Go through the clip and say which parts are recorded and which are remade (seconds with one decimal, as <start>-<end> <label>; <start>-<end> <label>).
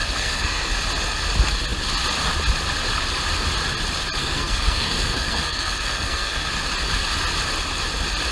0.0-0.7 remade; 0.7-4.2 recorded; 4.2-6.5 remade; 6.5-8.3 recorded